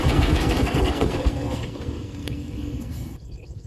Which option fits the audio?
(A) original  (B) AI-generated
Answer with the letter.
B